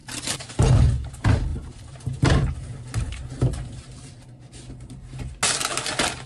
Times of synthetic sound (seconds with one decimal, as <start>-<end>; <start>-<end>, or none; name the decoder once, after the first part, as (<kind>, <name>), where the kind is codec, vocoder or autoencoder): 0.0-0.5 (vocoder, BigVGAN v2); 1.5-5.2